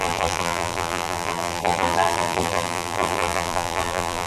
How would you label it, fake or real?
fake